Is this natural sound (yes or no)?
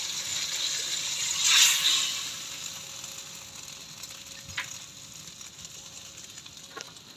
yes